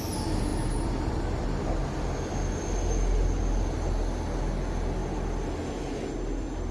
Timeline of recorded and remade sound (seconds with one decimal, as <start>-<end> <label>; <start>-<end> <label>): 0.0-6.7 recorded